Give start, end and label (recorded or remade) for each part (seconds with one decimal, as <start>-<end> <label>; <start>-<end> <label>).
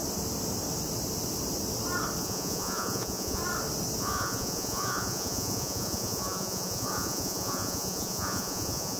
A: 0.0-2.2 recorded; 2.2-3.4 remade; 3.4-4.0 recorded; 4.0-9.0 remade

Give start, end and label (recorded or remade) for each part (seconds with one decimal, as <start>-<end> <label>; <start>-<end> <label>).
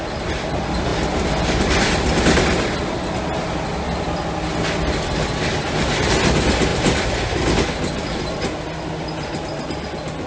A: 0.0-10.3 recorded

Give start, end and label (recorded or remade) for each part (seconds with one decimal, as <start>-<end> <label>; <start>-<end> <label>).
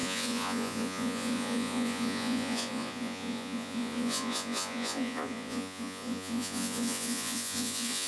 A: 0.0-8.1 remade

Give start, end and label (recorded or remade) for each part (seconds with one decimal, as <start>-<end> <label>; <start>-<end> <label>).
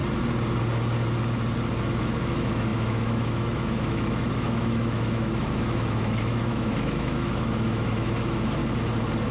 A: 0.0-1.9 recorded; 1.9-8.6 remade; 8.6-9.3 recorded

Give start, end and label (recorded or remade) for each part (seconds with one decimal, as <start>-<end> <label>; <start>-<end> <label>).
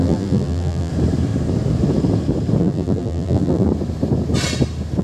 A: 0.0-0.9 remade; 0.9-2.6 recorded; 2.6-3.7 remade; 3.7-5.0 recorded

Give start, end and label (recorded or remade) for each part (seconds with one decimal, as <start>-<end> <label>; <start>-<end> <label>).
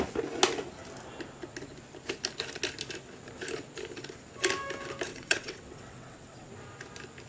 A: 0.0-5.1 recorded; 5.1-6.5 remade; 6.5-7.3 recorded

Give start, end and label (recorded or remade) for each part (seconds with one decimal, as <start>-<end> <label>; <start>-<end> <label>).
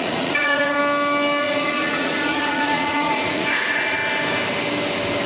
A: 0.0-0.8 remade; 0.8-1.4 recorded; 1.4-4.0 remade; 4.0-5.3 recorded